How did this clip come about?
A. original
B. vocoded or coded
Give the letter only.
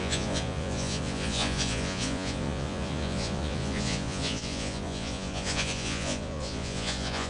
B